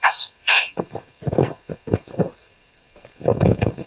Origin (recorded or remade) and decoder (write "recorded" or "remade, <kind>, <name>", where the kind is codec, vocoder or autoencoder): remade, codec, SNAC